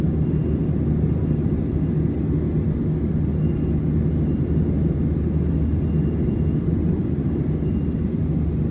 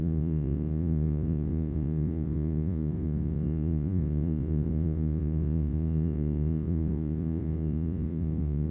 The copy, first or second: second